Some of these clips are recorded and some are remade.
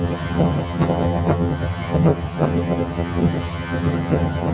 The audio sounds remade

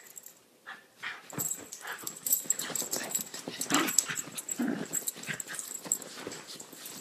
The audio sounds remade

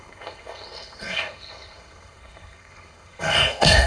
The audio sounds remade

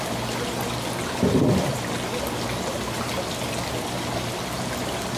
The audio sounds recorded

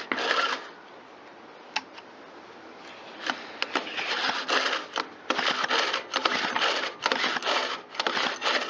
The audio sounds recorded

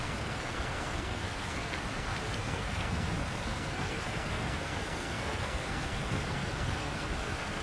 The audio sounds remade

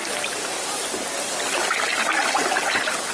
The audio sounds remade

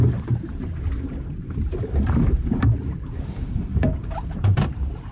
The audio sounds remade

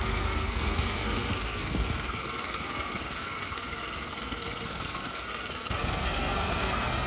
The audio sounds remade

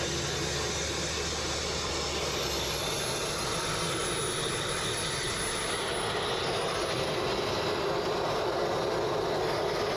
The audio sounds recorded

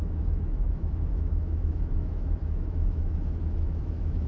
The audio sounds remade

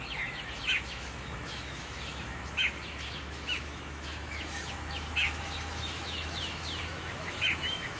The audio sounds remade